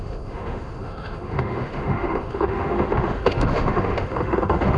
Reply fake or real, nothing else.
fake